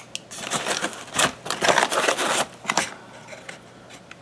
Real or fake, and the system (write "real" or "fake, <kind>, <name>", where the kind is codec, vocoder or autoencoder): real